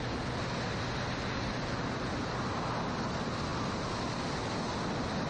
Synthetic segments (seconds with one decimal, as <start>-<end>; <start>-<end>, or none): none